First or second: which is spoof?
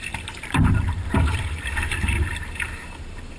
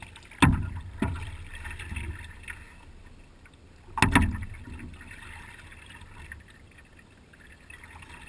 first